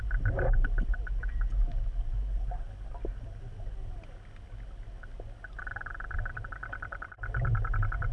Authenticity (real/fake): real